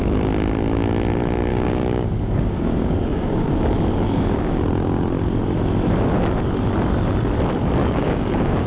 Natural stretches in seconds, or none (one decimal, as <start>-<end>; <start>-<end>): 0.0-1.5; 4.6-7.8